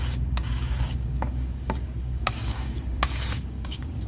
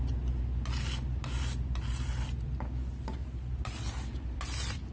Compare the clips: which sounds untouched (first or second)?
second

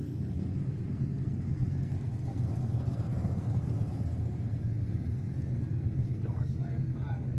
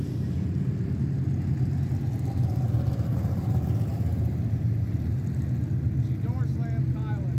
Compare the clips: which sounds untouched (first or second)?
second